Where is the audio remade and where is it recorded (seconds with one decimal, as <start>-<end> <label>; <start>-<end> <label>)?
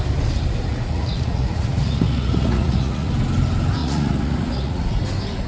0.0-0.7 recorded; 0.7-3.1 remade; 3.1-3.8 recorded; 3.8-5.0 remade; 5.0-5.5 recorded